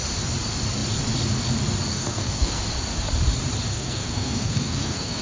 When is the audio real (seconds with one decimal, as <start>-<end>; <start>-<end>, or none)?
0.0-1.9; 2.6-3.7